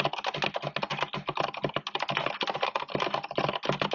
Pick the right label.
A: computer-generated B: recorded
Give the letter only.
B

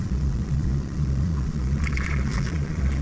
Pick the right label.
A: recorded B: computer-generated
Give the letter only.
B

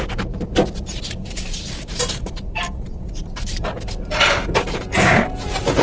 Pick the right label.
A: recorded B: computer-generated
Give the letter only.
B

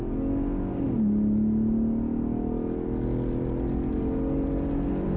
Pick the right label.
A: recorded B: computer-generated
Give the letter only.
A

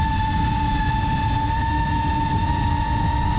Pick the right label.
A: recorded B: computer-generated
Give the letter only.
A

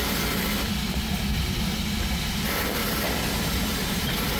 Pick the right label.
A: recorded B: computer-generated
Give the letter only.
A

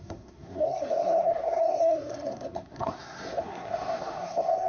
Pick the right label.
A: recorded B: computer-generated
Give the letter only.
B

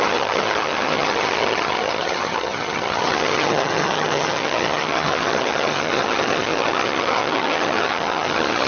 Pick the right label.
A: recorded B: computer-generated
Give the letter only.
B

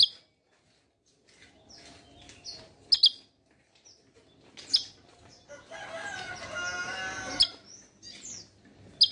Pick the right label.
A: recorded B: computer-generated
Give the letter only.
A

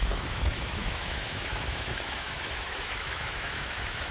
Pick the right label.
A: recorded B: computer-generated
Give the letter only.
B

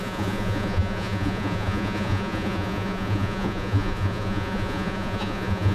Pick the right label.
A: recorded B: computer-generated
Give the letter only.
B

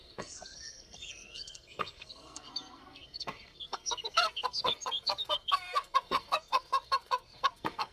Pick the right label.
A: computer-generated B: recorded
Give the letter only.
A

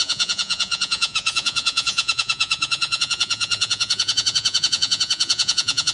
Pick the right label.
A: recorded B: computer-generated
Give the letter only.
B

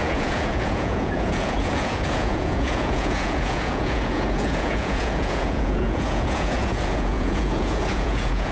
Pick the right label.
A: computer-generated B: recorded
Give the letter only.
A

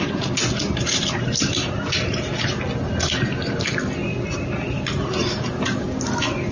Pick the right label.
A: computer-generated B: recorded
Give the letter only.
B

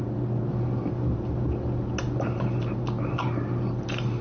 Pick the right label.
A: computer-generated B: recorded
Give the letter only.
B